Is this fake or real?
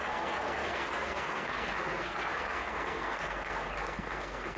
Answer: fake